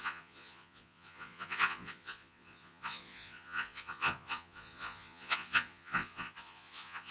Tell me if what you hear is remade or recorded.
remade